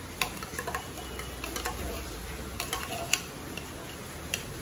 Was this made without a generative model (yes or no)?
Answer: yes